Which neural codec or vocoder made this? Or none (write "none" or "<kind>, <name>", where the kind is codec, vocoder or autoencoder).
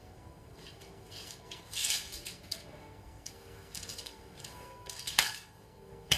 codec, SNAC